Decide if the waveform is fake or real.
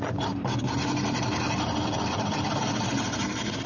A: real